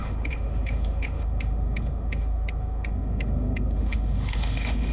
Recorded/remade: remade